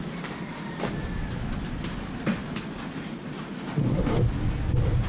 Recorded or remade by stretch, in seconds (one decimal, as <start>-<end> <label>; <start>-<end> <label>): 0.0-5.1 recorded